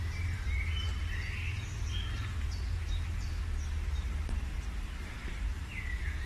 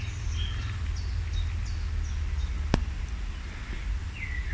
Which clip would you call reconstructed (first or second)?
first